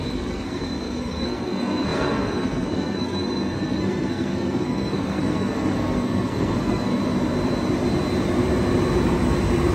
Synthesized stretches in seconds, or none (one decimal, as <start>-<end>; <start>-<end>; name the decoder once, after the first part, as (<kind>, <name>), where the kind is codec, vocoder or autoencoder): 0.0-7.0 (codec, SNAC)